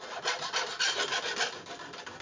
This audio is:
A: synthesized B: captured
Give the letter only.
B